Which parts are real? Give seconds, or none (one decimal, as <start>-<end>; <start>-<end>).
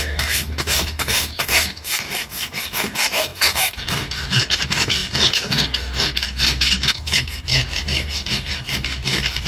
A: none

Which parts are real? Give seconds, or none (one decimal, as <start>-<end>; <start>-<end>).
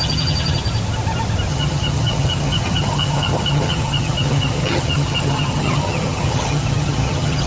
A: 0.6-1.5